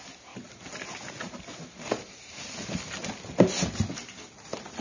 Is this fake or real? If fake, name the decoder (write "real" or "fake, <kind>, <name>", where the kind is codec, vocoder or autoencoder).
real